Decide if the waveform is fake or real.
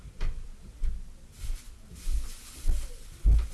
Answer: real